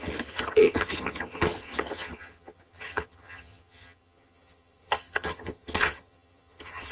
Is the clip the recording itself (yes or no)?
no